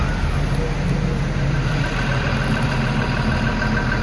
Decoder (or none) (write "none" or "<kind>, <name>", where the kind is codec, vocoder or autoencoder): none